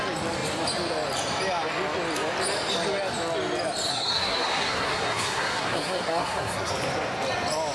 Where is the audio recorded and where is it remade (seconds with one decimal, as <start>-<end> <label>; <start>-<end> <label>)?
0.0-3.9 recorded; 3.9-6.7 remade; 6.7-7.7 recorded